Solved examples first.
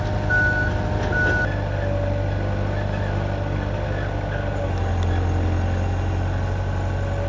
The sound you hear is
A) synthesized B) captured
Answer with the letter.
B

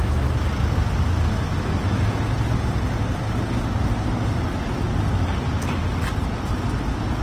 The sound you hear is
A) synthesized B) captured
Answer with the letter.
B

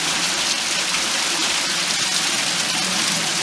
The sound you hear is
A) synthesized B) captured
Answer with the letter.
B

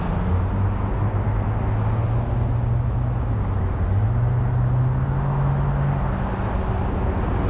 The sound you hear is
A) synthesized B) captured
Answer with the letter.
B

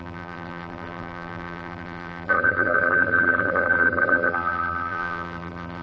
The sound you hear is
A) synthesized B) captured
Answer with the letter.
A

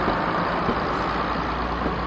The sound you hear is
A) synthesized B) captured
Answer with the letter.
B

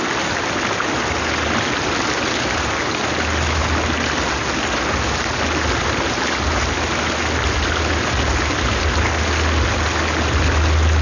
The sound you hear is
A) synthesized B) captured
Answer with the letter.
B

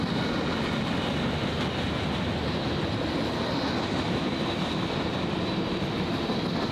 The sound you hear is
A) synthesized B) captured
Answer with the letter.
B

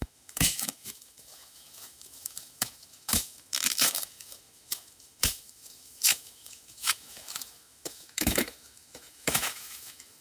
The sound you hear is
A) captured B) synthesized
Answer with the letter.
B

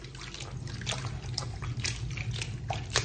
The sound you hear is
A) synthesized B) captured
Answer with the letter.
B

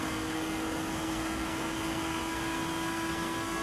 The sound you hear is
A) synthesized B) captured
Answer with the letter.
A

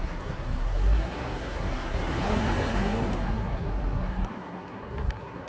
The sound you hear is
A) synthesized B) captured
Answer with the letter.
A